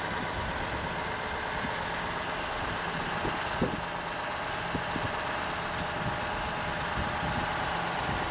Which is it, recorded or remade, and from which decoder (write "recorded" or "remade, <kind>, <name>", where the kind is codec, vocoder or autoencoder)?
recorded